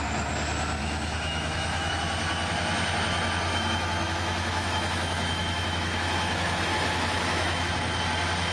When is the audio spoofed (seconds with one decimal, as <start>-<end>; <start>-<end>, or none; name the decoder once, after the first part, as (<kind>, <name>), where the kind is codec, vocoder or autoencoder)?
0.8-1.9 (autoencoder, DAC-VAE); 3.5-7.7